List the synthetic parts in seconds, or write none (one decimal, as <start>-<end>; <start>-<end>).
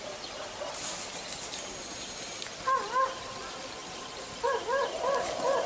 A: none